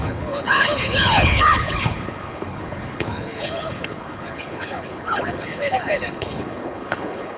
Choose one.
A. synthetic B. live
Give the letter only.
A